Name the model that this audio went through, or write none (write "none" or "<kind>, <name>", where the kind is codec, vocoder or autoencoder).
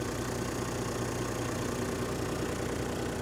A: none